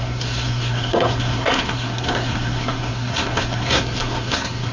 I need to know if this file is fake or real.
fake